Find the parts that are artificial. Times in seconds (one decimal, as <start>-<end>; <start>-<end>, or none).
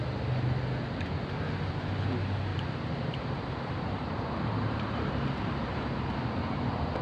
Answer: 2.5-6.1